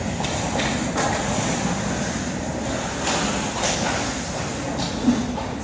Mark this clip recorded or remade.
recorded